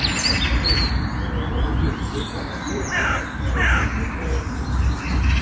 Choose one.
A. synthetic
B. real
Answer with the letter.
B